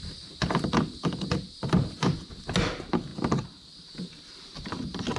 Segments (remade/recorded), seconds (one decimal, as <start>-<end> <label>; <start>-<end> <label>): 0.0-2.3 remade; 2.3-5.2 recorded